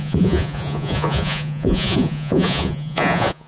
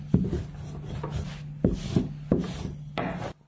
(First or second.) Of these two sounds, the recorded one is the second